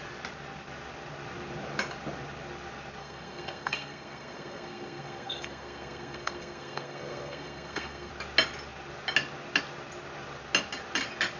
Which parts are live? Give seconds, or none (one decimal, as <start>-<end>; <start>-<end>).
0.0-3.0; 8.1-11.4